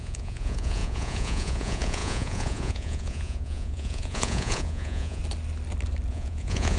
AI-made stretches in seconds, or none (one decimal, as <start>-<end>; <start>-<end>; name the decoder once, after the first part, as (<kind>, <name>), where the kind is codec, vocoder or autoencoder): 0.0-5.2 (vocoder, Vocos); 6.1-6.8